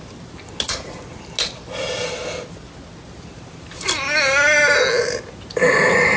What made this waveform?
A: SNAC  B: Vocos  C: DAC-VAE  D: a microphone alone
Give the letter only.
D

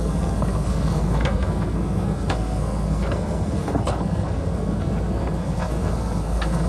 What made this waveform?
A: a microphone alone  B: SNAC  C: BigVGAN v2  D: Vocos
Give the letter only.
B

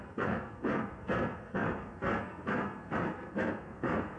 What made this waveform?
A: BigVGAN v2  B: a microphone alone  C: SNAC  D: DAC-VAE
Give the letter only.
C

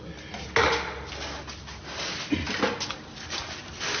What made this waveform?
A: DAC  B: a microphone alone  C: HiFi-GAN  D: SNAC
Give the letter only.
B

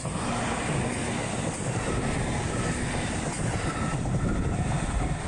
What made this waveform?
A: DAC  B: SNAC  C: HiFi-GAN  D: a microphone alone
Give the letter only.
D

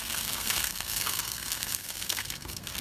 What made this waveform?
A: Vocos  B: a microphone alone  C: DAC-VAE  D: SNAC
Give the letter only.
D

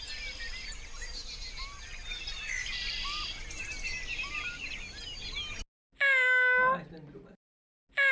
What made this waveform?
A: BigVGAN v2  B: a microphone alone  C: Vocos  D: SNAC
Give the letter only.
B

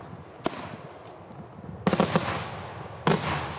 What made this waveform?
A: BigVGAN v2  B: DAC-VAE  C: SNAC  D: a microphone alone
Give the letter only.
D